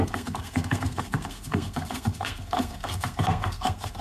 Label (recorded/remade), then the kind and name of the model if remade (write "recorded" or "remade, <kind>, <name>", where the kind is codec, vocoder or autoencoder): remade, codec, SNAC